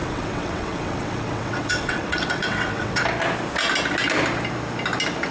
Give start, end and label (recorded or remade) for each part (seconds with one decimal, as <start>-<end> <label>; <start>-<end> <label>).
0.0-3.0 remade; 3.0-5.3 recorded